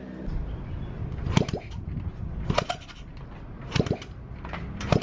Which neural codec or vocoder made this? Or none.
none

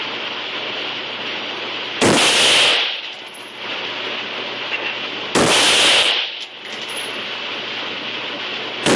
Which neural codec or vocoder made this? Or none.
none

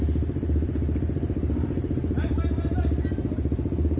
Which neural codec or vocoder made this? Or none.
none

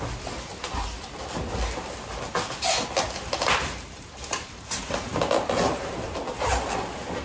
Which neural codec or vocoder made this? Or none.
none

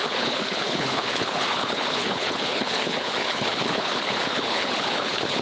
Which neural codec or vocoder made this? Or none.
codec, HILCodec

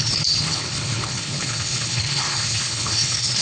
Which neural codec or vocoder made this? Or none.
codec, HILCodec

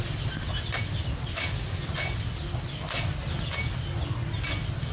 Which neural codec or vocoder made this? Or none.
none